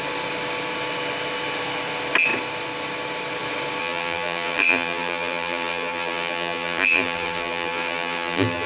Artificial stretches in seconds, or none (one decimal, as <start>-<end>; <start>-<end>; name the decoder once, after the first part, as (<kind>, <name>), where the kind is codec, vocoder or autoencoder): 3.8-8.7 (vocoder, BigVGAN v2)